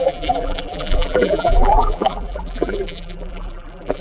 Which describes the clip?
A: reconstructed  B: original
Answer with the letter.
A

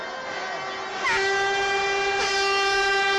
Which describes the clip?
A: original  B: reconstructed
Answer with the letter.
A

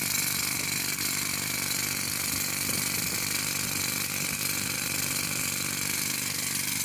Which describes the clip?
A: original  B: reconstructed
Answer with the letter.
A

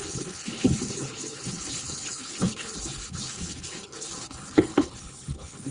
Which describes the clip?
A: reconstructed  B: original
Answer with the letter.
A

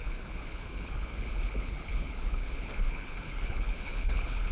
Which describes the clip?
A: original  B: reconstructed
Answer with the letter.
B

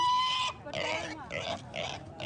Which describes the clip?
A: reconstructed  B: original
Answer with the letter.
B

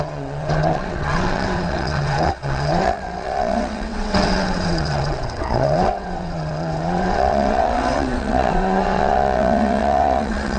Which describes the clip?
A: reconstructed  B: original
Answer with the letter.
A